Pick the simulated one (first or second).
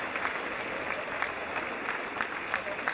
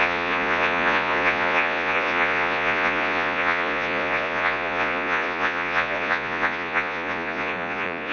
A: second